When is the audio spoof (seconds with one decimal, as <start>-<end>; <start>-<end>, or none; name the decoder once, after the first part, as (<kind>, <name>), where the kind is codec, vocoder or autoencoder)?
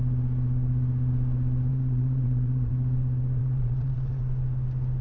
1.7-2.7 (vocoder, Vocos); 3.4-4.2